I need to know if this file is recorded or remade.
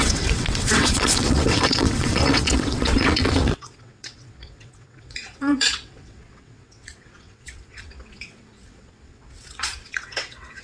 remade